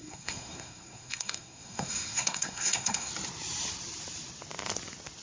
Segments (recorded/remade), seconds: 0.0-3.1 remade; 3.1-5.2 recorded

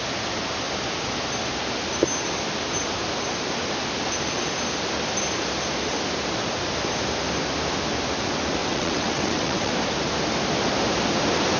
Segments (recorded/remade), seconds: 0.0-8.6 recorded; 8.6-9.7 remade; 9.7-11.6 recorded

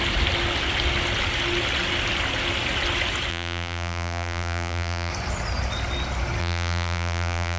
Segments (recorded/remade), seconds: 0.0-3.3 recorded; 3.3-5.1 remade; 5.1-6.4 recorded; 6.4-7.6 remade

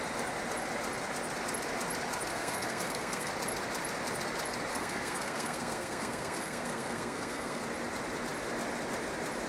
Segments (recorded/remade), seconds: 0.0-2.3 recorded; 2.3-3.3 remade; 3.3-4.7 recorded; 4.7-7.6 remade; 7.6-9.5 recorded

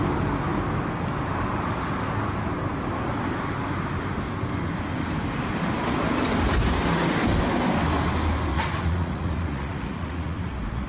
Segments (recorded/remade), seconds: 0.0-8.5 recorded; 8.5-10.9 remade

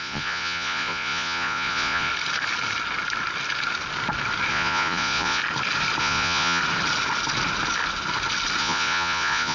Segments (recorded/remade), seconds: 0.0-2.1 remade; 2.1-4.5 recorded; 4.5-5.4 remade; 5.4-6.0 recorded; 6.0-6.6 remade; 6.6-8.6 recorded; 8.6-9.5 remade